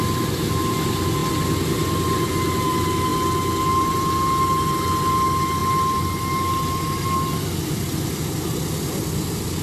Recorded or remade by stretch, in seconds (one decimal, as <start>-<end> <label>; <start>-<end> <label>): 0.0-9.6 recorded

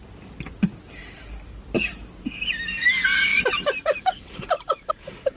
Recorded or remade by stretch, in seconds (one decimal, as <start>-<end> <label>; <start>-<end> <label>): 0.0-3.3 recorded; 3.3-4.9 remade; 4.9-5.4 recorded

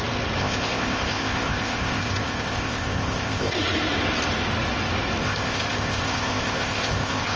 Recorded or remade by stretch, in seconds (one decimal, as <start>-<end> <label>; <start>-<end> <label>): 0.0-0.4 recorded; 0.4-3.6 remade; 3.6-5.2 recorded; 5.2-7.4 remade